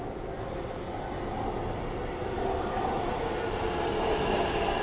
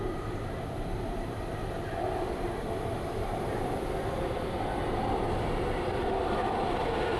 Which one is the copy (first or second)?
second